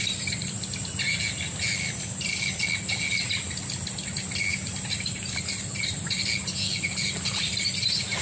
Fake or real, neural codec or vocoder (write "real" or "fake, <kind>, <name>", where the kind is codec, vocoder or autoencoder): real